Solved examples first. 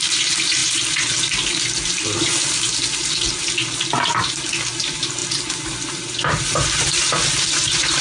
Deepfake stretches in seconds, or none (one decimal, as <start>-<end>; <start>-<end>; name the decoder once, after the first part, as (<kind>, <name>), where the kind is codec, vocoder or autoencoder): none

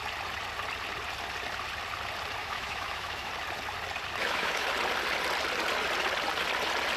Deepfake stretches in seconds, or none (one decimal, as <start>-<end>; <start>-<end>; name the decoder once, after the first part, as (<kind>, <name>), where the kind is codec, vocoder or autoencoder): 2.4-3.3 (autoencoder, DAC-VAE); 4.2-4.7

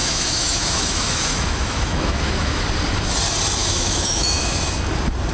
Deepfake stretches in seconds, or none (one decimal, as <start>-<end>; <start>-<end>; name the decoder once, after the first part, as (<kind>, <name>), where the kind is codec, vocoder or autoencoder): 0.0-2.6 (autoencoder, DAC-VAE); 3.6-4.6

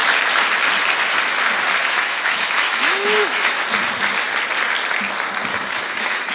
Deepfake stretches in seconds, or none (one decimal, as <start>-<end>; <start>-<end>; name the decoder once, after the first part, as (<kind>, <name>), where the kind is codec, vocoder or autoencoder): 1.8-3.6 (autoencoder, DAC-VAE); 5.5-6.3